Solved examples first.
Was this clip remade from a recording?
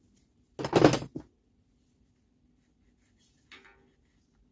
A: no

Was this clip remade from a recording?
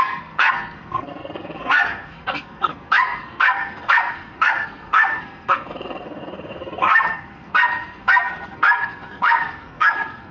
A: yes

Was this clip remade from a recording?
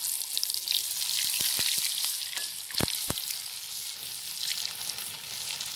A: no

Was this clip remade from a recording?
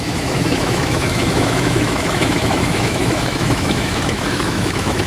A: yes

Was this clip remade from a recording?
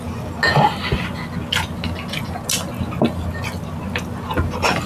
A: no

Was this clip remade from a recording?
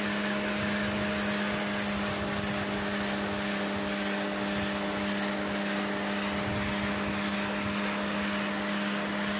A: no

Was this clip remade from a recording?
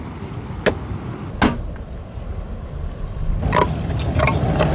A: no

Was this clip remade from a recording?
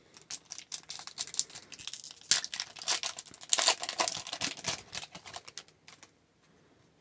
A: no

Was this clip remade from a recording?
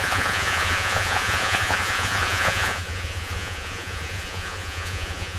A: yes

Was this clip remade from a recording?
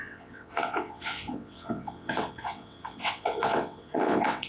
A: yes